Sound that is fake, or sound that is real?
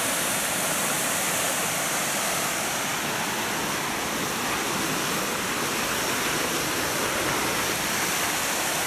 fake